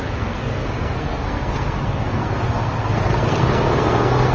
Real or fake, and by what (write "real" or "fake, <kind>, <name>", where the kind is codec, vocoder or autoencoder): fake, codec, SNAC